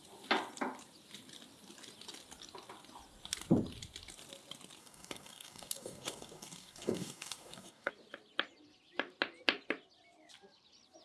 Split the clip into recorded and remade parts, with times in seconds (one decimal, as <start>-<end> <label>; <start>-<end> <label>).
0.0-4.8 recorded; 4.8-7.9 remade; 7.9-11.0 recorded